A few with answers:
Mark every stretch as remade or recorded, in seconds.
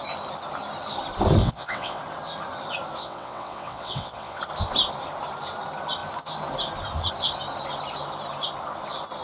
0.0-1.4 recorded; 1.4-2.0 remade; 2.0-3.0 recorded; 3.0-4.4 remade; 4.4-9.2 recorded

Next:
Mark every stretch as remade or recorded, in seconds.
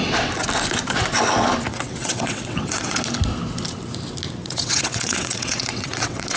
0.0-1.7 recorded; 1.7-3.0 remade; 3.0-4.4 recorded; 4.4-6.4 remade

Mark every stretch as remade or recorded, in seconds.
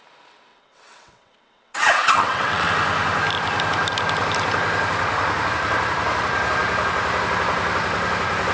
0.0-0.5 recorded; 0.5-2.7 remade; 2.7-8.5 recorded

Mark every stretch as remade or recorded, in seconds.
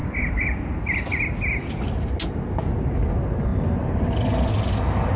0.0-5.2 recorded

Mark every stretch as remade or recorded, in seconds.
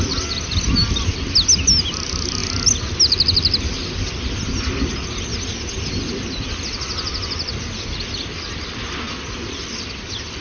0.0-10.4 recorded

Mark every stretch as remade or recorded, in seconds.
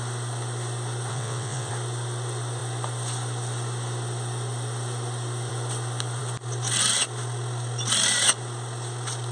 0.0-1.1 recorded; 1.1-1.7 remade; 1.7-9.3 recorded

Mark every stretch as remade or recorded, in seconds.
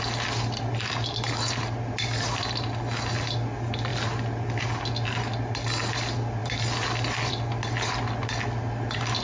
0.0-9.2 recorded